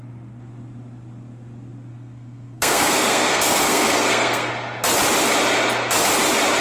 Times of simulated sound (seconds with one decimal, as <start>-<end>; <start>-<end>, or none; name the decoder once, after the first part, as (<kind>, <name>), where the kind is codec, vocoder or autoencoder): 1.9-4.5 (codec, SNAC)